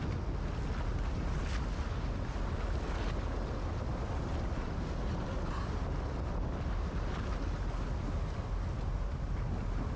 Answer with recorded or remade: recorded